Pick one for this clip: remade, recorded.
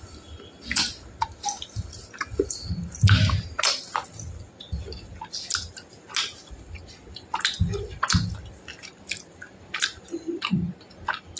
recorded